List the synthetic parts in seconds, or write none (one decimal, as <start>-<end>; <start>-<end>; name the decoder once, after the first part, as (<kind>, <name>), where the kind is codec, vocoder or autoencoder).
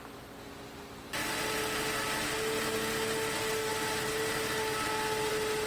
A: none